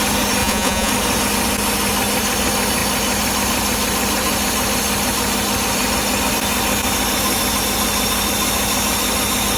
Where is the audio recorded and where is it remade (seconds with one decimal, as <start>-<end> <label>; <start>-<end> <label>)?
0.0-0.4 recorded; 0.4-0.9 remade; 0.9-9.6 recorded